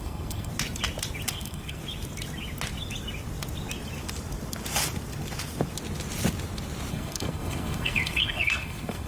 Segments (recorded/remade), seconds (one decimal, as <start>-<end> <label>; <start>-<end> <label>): 0.0-0.5 remade; 0.5-1.3 recorded; 1.3-1.8 remade; 1.8-6.9 recorded; 6.9-9.1 remade